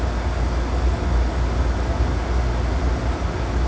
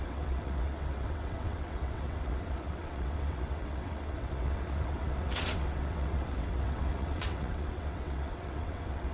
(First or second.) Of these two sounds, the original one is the first